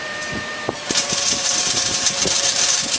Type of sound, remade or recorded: remade